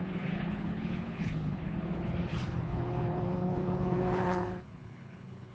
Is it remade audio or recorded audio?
remade